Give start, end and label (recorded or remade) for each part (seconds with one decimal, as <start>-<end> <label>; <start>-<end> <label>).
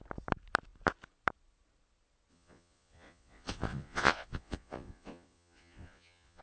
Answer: 0.0-2.3 recorded; 2.3-6.4 remade